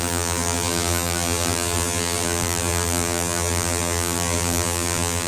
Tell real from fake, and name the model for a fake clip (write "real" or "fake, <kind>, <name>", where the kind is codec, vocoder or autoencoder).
fake, vocoder, BigVGAN v2